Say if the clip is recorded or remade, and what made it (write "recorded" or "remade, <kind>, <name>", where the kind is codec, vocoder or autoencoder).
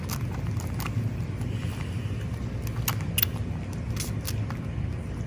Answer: recorded